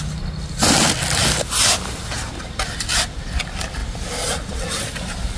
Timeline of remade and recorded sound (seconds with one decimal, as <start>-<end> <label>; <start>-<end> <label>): 0.0-5.4 recorded